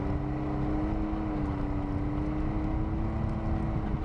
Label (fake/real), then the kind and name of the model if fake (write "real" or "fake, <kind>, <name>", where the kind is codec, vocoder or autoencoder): real